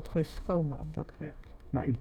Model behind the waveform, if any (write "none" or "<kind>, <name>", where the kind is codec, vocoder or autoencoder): codec, DAC